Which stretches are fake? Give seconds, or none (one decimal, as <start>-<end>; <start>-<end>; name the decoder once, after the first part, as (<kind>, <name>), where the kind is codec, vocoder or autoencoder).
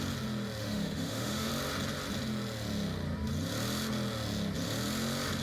0.6-1.5 (autoencoder, DAC-VAE)